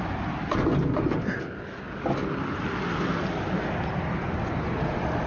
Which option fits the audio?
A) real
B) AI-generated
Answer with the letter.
A